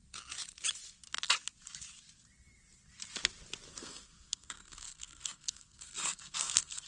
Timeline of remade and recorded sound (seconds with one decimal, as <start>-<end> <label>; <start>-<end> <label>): 0.0-3.7 recorded; 3.7-6.9 remade